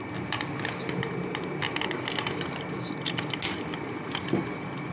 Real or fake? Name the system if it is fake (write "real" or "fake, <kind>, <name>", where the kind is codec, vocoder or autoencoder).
real